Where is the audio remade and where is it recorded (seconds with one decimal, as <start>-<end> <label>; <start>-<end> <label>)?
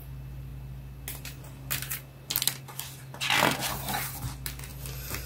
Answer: 0.0-5.3 recorded